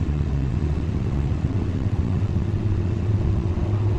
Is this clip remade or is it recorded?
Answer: remade